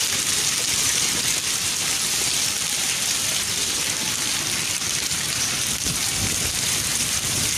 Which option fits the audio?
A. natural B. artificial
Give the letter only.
B